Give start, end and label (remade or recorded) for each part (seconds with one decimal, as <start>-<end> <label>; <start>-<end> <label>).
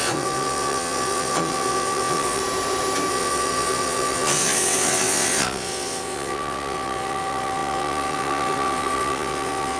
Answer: 0.0-2.4 remade; 2.4-3.1 recorded; 3.1-9.8 remade